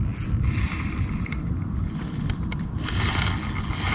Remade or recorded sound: recorded